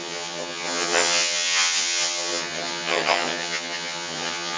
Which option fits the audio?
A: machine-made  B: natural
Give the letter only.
A